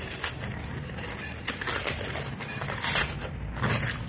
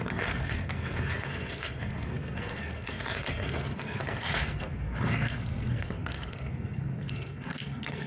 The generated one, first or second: second